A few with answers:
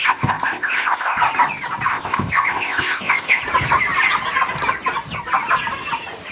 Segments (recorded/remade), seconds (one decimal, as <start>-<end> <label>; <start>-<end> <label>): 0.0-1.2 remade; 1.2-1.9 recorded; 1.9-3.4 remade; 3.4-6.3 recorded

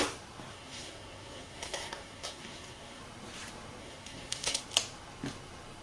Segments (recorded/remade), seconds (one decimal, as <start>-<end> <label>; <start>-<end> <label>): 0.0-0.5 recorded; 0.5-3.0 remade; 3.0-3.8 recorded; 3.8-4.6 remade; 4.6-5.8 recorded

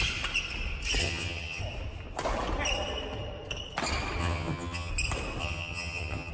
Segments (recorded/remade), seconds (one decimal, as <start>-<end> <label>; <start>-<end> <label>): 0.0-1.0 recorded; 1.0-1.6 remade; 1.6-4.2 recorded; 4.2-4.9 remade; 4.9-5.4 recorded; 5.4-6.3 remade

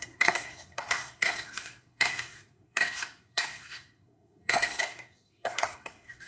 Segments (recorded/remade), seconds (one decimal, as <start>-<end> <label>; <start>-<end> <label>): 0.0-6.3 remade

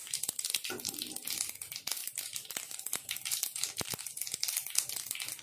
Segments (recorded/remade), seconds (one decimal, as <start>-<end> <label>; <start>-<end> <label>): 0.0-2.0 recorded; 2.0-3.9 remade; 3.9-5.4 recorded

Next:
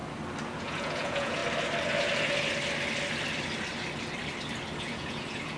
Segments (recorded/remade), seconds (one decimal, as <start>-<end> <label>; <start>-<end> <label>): 0.0-0.6 recorded; 0.6-1.4 remade; 1.4-4.8 recorded; 4.8-5.6 remade

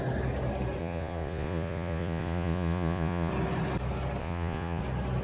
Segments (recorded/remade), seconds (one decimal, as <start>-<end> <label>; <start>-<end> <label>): 0.0-0.8 recorded; 0.8-3.3 remade; 3.3-4.2 recorded; 4.2-4.8 remade; 4.8-5.2 recorded